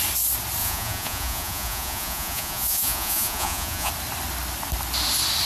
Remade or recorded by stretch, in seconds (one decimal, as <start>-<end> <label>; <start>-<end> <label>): 0.0-0.6 recorded; 0.6-3.9 remade; 3.9-5.5 recorded

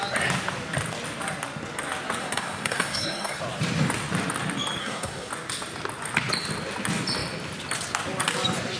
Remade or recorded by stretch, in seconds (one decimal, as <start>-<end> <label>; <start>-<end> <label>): 0.0-2.2 recorded; 2.2-3.4 remade; 3.4-4.8 recorded; 4.8-5.3 remade; 5.3-8.8 recorded

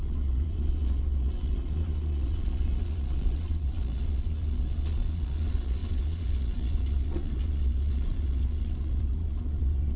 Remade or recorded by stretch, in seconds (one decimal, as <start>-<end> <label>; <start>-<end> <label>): 0.0-10.0 remade